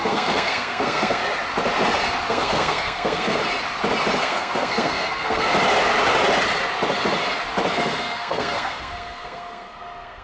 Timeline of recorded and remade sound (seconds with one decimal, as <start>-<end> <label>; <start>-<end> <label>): 0.0-1.2 remade; 1.2-2.3 recorded; 2.3-3.4 remade; 3.4-4.2 recorded; 4.2-5.5 remade; 5.5-7.7 recorded; 7.7-10.2 remade